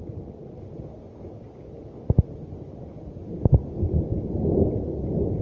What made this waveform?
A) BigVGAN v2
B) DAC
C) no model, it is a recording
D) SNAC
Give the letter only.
C